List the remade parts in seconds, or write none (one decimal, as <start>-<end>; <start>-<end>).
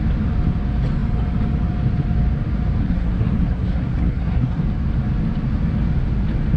2.8-4.6